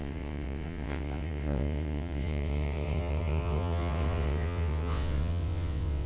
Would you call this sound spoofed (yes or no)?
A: yes